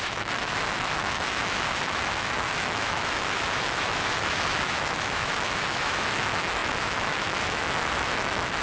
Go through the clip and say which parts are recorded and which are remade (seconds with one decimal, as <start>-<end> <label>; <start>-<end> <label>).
0.0-8.6 remade